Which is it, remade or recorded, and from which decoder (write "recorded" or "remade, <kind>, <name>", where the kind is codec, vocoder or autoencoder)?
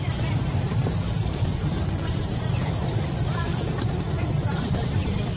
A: remade, vocoder, BigVGAN v2